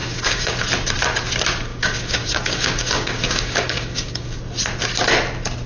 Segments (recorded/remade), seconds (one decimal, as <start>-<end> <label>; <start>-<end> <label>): 0.0-0.6 remade; 0.6-1.7 recorded; 1.7-4.4 remade; 4.4-5.7 recorded